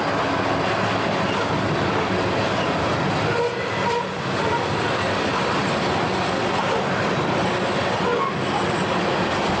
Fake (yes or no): no